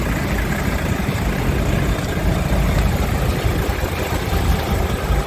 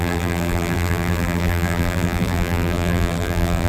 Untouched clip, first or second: first